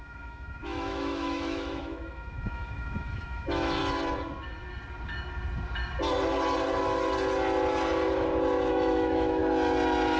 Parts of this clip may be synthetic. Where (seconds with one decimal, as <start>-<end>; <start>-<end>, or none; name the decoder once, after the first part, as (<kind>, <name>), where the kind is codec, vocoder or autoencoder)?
0.0-3.8 (autoencoder, DAC-VAE); 8.7-9.4